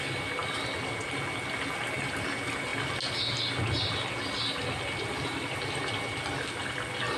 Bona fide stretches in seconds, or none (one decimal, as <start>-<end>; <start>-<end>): 0.0-7.2